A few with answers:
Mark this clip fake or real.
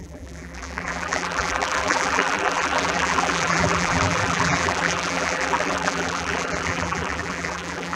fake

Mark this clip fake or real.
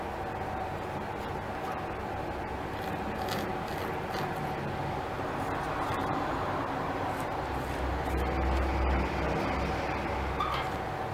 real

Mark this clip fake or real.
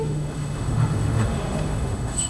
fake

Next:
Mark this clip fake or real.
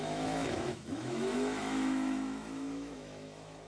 fake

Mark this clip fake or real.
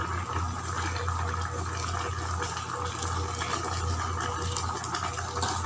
real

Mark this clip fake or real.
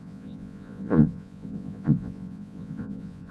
fake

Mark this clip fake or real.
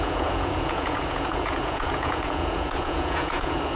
fake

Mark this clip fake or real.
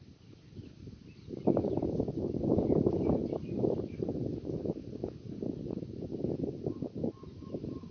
real